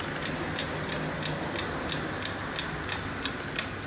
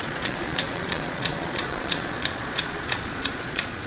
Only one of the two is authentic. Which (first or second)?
first